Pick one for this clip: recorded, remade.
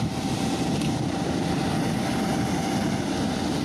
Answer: recorded